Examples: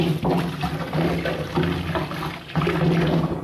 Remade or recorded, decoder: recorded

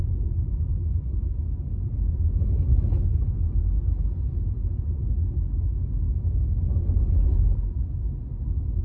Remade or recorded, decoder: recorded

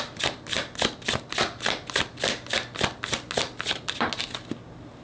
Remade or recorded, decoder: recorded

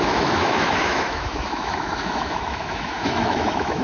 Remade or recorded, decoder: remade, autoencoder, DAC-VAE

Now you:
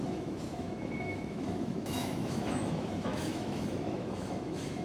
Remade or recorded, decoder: remade, autoencoder, DAC-VAE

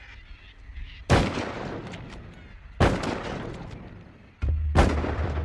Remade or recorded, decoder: recorded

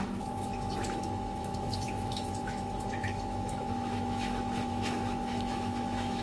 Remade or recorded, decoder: remade, autoencoder, DAC-VAE